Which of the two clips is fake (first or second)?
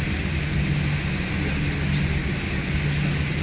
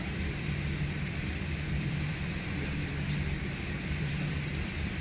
second